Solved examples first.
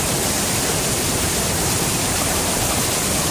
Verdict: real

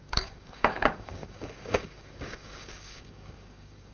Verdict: fake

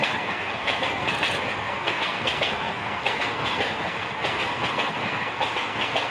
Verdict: fake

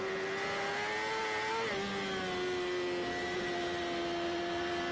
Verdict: real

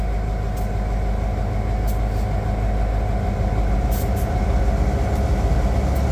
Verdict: real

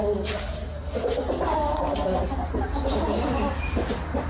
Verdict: real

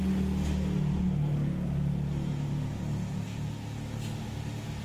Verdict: real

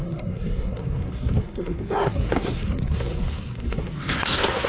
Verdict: fake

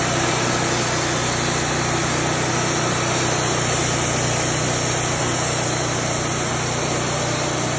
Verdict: real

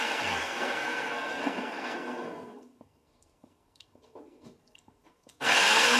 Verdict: fake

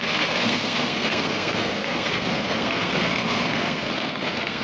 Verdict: fake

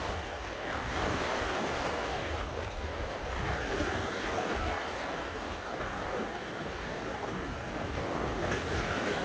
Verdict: fake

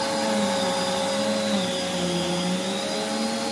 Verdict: real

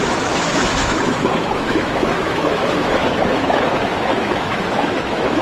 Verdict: fake